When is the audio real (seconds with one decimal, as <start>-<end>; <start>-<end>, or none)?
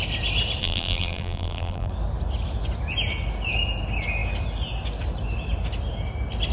0.0-0.6; 1.9-6.5